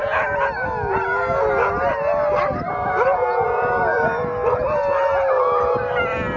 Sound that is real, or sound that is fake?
real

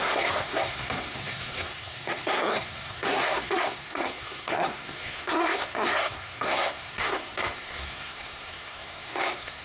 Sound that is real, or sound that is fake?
fake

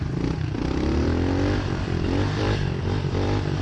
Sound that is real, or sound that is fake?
fake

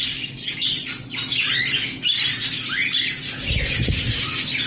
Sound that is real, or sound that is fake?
real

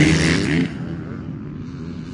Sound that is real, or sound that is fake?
real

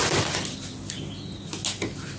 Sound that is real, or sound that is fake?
real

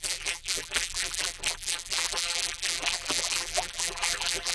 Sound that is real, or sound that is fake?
fake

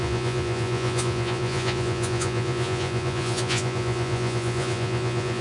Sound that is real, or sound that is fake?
fake